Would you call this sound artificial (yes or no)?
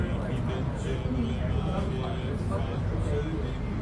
no